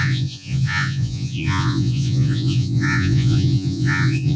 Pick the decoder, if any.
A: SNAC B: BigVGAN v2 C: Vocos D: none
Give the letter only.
C